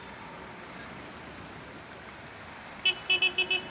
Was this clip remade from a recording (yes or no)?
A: no